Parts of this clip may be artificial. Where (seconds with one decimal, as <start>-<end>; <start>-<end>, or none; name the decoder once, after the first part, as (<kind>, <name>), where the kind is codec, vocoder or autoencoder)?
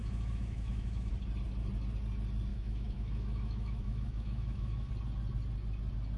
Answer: 0.0-1.1 (autoencoder, DAC-VAE); 2.5-4.9